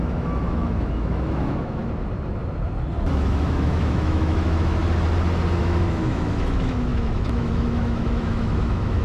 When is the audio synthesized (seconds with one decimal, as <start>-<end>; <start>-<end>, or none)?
0.0-1.8; 3.1-4.8; 5.6-9.0